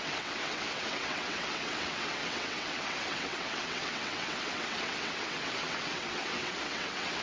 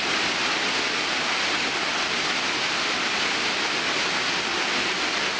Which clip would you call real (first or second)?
second